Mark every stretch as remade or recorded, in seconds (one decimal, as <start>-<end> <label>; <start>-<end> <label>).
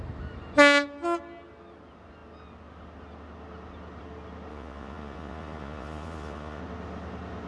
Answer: 0.0-4.5 recorded; 4.5-6.6 remade; 6.6-7.5 recorded